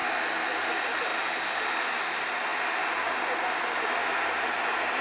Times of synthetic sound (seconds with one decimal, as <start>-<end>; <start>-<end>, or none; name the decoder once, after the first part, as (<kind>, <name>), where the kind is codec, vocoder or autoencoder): 1.1-1.6 (vocoder, BigVGAN v2)